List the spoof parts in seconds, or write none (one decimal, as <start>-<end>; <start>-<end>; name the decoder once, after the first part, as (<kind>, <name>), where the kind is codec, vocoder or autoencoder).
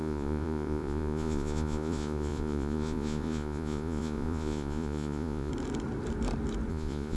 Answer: 0.0-5.5 (vocoder, Vocos); 6.7-7.2